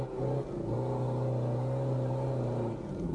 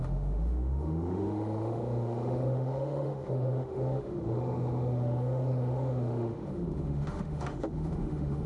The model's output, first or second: second